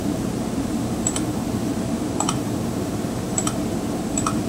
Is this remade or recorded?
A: remade